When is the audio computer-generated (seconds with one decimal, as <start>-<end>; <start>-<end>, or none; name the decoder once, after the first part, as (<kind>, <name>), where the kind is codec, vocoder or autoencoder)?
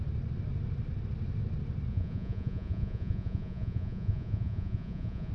1.9-5.3 (vocoder, Vocos)